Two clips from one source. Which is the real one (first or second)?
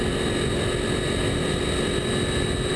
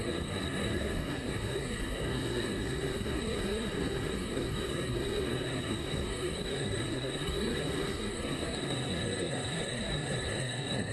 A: first